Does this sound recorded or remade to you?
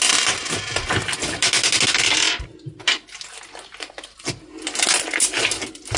recorded